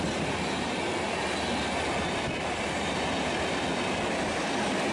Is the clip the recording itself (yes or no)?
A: yes